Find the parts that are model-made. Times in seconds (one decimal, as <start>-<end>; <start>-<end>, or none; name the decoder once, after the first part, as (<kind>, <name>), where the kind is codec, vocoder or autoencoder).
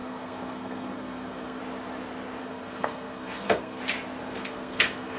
0.0-1.6 (codec, SNAC); 2.4-3.8; 4.2-5.2